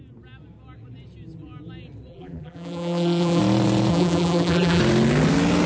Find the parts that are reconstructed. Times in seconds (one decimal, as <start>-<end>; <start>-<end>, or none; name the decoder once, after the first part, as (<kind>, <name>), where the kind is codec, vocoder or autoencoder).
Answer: 2.1-3.4 (vocoder, BigVGAN v2); 3.9-4.8